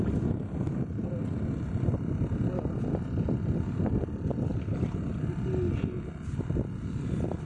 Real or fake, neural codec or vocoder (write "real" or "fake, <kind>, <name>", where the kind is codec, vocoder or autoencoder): real